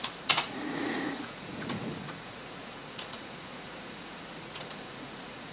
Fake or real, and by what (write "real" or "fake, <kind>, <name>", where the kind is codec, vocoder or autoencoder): fake, vocoder, Vocos